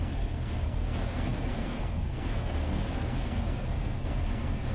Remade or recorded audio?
remade